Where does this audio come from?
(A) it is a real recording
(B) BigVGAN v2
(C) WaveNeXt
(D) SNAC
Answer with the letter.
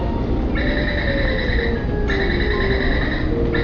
A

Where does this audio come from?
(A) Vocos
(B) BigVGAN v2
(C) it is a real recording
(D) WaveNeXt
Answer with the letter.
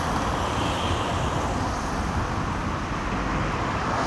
C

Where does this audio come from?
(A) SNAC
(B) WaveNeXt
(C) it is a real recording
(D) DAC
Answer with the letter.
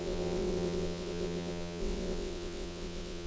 B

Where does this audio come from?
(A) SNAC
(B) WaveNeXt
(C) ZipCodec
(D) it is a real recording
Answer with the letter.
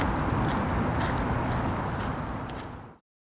D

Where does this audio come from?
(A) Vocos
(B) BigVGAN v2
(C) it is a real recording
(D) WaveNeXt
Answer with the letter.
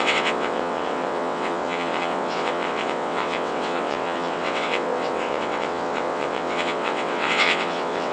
D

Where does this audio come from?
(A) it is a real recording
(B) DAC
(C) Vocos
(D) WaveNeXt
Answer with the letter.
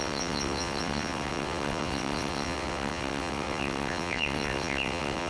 D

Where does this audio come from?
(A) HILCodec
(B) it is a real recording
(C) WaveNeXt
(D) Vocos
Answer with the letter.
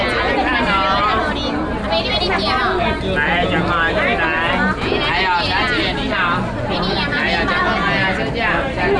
B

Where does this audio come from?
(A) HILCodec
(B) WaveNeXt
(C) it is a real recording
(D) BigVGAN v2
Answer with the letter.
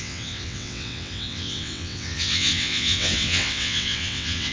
B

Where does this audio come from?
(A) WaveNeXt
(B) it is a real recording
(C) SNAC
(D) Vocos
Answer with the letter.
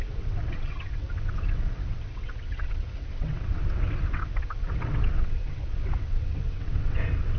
A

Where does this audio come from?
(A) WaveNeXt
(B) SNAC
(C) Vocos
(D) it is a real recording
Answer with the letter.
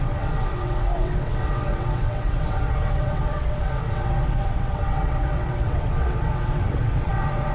A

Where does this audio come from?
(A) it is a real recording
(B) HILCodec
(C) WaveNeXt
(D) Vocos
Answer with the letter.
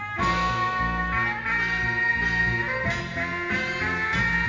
A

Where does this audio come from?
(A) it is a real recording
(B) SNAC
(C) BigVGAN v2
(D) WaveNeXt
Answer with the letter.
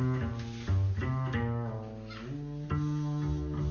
A